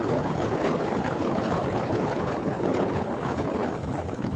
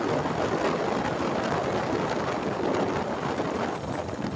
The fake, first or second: first